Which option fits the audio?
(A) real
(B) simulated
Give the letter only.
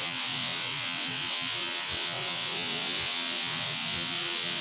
B